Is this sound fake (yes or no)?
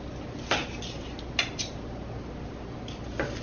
no